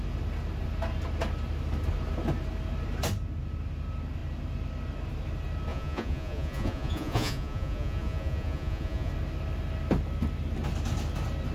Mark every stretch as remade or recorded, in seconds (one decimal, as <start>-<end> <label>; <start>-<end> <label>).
0.0-5.7 recorded; 5.7-9.1 remade; 9.1-11.5 recorded